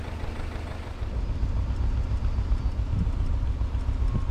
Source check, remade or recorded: recorded